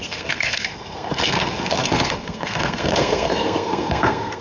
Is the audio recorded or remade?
remade